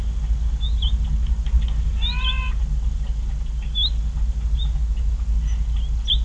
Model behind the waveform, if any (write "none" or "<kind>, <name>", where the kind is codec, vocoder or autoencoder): none